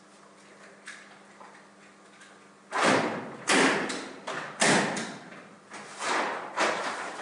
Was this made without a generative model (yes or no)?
yes